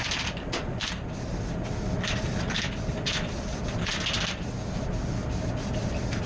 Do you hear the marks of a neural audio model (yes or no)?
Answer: no